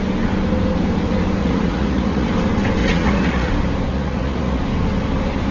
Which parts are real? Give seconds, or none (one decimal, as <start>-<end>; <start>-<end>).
0.0-1.4; 2.3-2.8; 3.5-3.9; 4.6-5.5